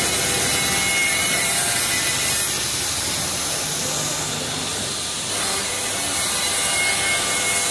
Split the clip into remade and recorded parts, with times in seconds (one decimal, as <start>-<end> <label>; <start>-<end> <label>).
0.0-1.0 recorded; 1.0-1.8 remade; 1.8-4.7 recorded; 4.7-6.8 remade; 6.8-7.7 recorded